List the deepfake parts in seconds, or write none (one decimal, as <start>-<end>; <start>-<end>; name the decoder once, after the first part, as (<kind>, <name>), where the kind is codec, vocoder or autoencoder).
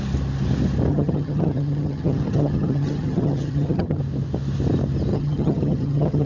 0.9-4.0 (vocoder, HiFi-GAN); 5.1-6.3